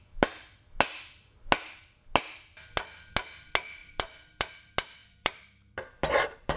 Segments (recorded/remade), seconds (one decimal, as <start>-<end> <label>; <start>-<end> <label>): 0.0-3.8 recorded; 3.8-4.5 remade; 4.5-5.0 recorded; 5.0-6.6 remade